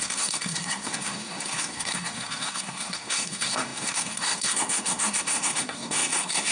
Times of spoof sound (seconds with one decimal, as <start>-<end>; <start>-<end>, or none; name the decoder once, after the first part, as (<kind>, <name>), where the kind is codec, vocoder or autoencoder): 0.0-6.5 (codec, SNAC)